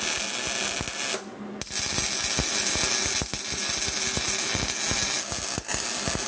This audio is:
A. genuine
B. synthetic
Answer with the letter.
A